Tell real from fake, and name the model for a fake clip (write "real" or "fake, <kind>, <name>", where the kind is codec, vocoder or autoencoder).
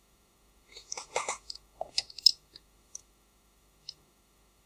fake, autoencoder, DAC-VAE